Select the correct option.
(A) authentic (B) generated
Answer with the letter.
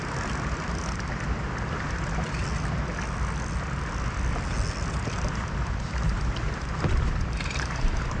A